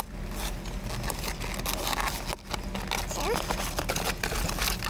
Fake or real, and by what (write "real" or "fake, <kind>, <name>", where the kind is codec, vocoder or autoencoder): real